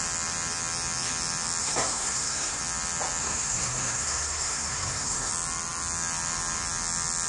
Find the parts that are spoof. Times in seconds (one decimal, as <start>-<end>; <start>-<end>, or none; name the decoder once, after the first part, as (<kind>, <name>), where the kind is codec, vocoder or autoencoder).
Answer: 1.6-2.6 (codec, SNAC); 3.2-5.3